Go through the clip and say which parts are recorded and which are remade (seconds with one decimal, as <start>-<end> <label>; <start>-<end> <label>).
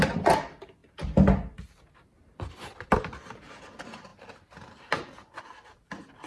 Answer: 0.0-6.3 recorded